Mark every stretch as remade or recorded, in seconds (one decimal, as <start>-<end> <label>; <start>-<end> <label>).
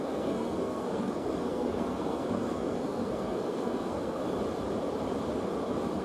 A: 0.0-4.2 remade; 4.2-6.0 recorded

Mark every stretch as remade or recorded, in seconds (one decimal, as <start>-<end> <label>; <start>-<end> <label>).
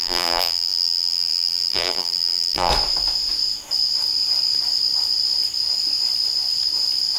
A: 0.0-2.7 remade; 2.7-7.2 recorded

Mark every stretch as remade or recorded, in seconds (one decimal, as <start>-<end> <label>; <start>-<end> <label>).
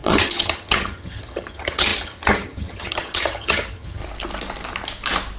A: 0.0-4.0 remade; 4.0-5.4 recorded